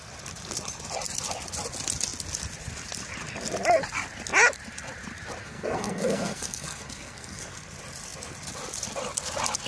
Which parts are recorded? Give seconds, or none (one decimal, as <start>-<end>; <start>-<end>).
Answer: 0.0-5.4; 7.5-9.7